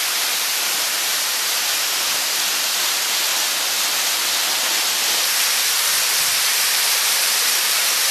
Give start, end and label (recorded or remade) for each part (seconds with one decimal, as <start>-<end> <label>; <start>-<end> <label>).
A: 0.0-3.3 remade; 3.3-4.8 recorded; 4.8-8.1 remade